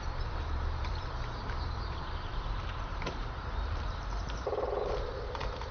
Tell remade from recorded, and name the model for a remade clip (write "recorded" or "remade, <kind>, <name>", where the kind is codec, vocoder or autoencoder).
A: remade, vocoder, BigVGAN v2